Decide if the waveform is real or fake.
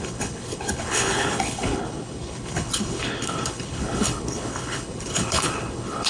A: fake